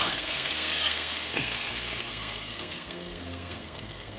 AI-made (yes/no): yes